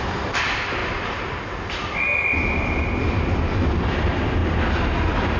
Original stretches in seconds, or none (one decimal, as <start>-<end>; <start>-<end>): 0.0-5.4